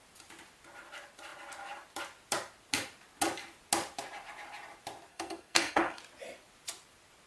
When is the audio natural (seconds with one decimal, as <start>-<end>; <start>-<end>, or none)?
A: 0.0-5.1; 6.0-7.3